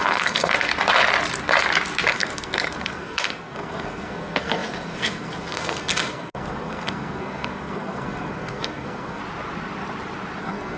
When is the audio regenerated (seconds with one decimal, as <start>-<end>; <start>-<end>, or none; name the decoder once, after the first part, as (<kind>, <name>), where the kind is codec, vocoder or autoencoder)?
0.0-0.7 (codec, SNAC); 2.1-9.2; 10.4-10.8